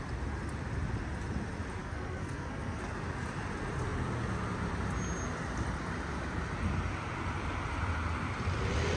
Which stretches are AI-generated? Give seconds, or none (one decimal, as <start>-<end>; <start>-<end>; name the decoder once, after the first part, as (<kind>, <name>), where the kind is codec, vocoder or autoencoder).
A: 1.8-2.8 (codec, SNAC)